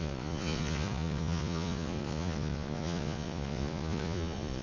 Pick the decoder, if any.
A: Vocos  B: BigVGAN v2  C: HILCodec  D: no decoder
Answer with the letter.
A